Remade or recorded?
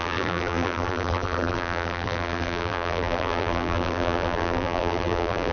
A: remade